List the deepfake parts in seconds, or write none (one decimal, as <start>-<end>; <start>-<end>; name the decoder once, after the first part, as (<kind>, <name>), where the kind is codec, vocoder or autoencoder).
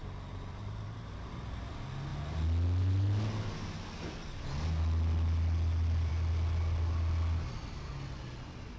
0.0-1.7 (vocoder, BigVGAN v2)